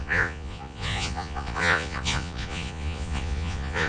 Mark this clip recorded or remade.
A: remade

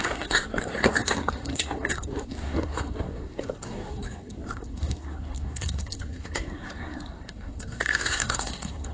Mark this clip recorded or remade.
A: remade